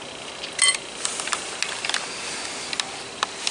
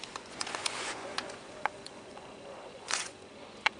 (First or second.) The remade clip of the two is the second